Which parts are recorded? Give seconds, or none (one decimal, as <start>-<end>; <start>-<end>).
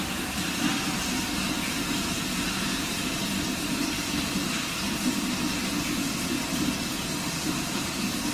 none